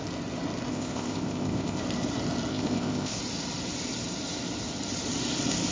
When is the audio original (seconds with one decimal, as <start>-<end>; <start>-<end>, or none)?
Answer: 0.0-0.7; 1.8-2.5; 3.2-5.7